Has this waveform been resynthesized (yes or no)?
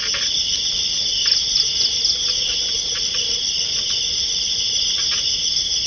no